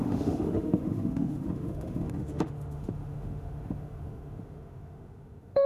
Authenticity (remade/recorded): remade